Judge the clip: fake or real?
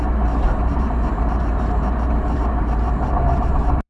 fake